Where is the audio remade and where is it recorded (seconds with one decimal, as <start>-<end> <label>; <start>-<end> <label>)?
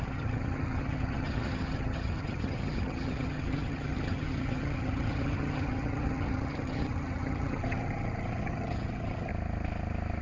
0.0-9.3 remade; 9.3-10.2 recorded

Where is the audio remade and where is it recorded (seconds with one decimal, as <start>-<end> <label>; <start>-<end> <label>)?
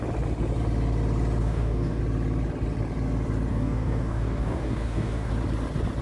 0.0-1.4 recorded; 1.4-2.0 remade; 2.0-3.5 recorded; 3.5-5.3 remade; 5.3-6.0 recorded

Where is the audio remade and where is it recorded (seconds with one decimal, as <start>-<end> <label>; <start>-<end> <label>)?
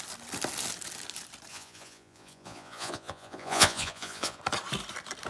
0.0-1.5 recorded; 1.5-4.4 remade; 4.4-5.3 recorded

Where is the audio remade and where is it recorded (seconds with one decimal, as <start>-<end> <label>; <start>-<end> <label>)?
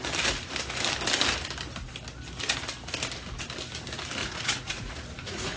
0.0-4.2 recorded; 4.2-5.6 remade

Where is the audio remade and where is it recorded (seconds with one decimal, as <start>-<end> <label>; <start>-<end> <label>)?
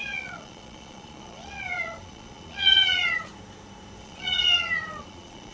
0.0-3.3 remade; 3.3-4.0 recorded; 4.0-5.5 remade